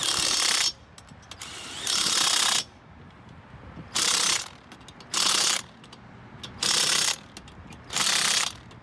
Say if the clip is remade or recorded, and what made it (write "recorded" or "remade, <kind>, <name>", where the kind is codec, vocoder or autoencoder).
recorded